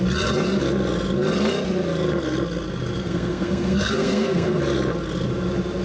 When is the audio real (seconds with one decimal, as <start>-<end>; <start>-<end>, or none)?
0.0-3.0; 4.6-5.8